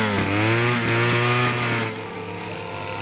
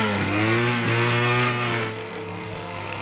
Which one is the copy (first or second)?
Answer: second